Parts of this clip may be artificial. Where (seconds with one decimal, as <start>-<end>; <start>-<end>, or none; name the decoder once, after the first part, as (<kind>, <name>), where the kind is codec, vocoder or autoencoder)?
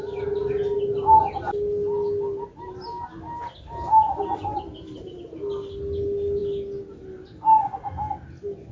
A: none